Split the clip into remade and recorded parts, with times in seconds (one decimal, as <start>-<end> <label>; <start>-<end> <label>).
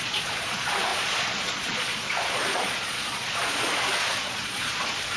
0.0-5.2 remade